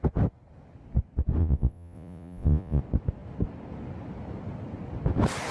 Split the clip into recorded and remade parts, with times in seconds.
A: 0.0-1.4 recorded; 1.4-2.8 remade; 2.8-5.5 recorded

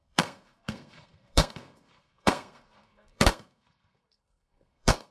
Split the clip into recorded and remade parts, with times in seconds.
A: 0.0-5.1 remade

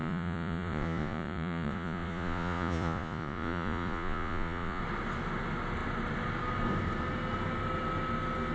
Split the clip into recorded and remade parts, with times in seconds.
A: 0.0-4.8 remade; 4.8-8.5 recorded

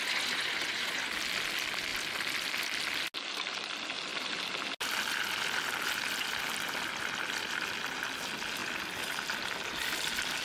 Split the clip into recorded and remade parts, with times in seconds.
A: 0.0-10.4 recorded